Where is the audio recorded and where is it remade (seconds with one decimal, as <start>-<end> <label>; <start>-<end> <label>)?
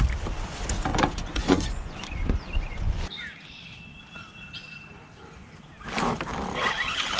0.0-0.9 recorded; 0.9-3.1 remade; 3.1-7.2 recorded